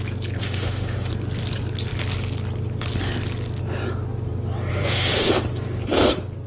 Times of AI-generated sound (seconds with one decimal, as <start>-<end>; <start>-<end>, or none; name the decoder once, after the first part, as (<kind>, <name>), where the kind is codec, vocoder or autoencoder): 0.4-1.1 (autoencoder, DAC-VAE); 4.7-5.3